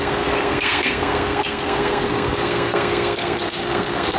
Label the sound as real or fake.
fake